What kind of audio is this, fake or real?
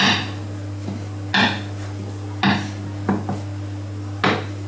real